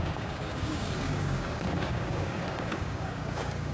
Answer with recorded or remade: remade